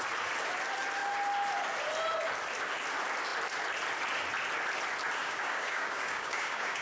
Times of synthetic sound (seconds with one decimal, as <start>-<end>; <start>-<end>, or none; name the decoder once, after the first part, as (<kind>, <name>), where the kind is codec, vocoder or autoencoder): 5.2-6.8 (codec, DAC)